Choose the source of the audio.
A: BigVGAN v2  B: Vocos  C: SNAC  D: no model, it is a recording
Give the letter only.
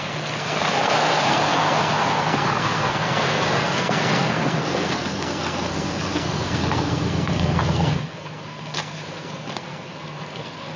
C